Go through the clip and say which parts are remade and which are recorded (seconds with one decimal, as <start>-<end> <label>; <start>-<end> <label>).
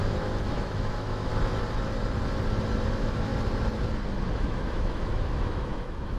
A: 0.0-1.3 remade; 1.3-2.9 recorded; 2.9-3.3 remade; 3.3-4.3 recorded; 4.3-6.2 remade